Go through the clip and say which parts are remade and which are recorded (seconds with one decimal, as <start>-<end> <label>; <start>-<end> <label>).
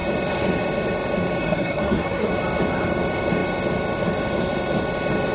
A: 0.0-1.4 recorded; 1.4-2.3 remade; 2.3-5.3 recorded